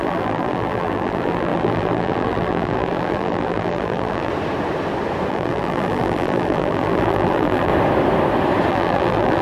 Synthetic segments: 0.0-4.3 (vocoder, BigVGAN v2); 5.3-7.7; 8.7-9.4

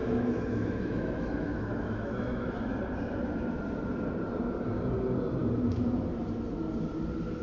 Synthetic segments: 0.0-2.6 (autoencoder, DAC-VAE)